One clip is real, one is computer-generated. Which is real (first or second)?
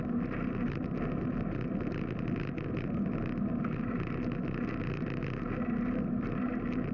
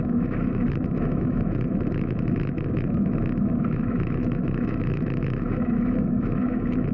first